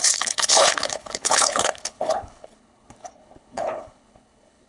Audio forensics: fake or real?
fake